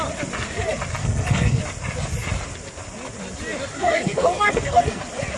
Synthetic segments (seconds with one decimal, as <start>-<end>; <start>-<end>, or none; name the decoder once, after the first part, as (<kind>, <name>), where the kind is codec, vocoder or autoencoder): 1.0-1.6 (codec, SNAC); 3.7-5.0